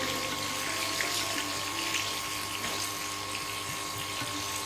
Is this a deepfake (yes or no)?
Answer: no